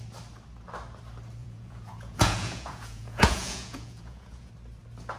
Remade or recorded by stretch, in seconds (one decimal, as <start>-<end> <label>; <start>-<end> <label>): 0.0-1.4 recorded; 1.4-4.5 remade; 4.5-5.2 recorded